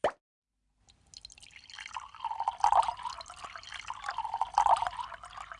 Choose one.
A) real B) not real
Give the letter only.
A